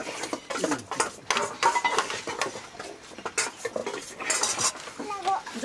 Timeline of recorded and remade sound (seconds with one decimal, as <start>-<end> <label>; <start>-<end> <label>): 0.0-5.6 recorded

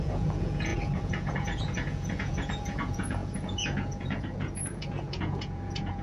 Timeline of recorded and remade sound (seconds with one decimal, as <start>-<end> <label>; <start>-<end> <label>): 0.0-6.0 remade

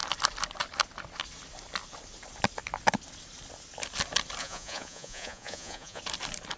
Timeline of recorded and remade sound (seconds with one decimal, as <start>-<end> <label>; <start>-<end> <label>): 0.0-4.4 recorded; 4.4-6.0 remade; 6.0-6.6 recorded

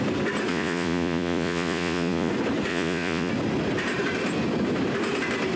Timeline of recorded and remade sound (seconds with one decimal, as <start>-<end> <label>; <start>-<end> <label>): 0.0-0.5 recorded; 0.5-2.3 remade; 2.3-2.7 recorded; 2.7-3.3 remade; 3.3-5.6 recorded

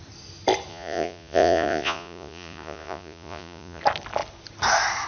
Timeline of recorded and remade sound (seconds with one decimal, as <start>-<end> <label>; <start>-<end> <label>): 0.0-0.7 recorded; 0.7-3.8 remade; 3.8-5.1 recorded

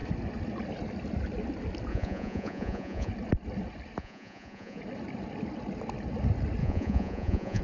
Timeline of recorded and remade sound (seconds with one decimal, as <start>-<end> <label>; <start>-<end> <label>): 0.0-1.9 recorded; 1.9-3.1 remade; 3.1-4.0 recorded; 4.0-4.8 remade; 4.8-6.6 recorded; 6.6-7.6 remade

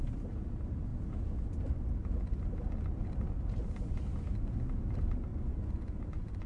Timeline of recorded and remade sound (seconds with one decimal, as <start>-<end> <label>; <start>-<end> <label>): 0.0-5.3 recorded; 5.3-6.5 remade

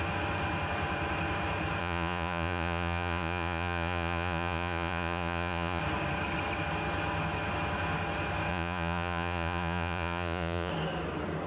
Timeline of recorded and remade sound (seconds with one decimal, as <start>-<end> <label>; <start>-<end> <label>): 0.0-1.8 recorded; 1.8-5.8 remade; 5.8-8.5 recorded; 8.5-10.7 remade; 10.7-11.5 recorded